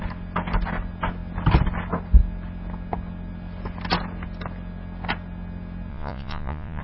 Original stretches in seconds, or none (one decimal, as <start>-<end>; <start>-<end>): 0.0-5.9